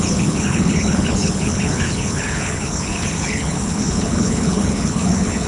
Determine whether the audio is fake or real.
fake